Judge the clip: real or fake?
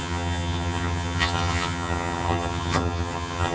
fake